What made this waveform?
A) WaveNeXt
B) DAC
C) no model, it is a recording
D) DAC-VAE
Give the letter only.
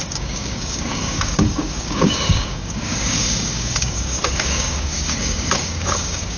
B